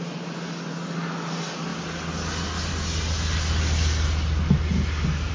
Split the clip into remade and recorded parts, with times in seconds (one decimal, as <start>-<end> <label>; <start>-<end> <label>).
0.0-5.3 recorded